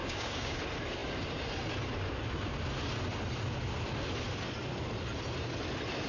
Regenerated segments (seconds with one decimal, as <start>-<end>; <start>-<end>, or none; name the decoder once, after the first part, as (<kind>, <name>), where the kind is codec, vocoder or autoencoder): 0.0-0.6 (codec, DAC)